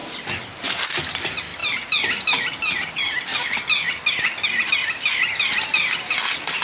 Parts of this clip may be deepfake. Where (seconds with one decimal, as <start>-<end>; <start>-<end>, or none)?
none